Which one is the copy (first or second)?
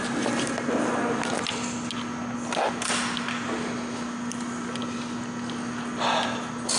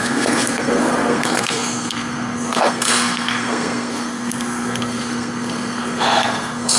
second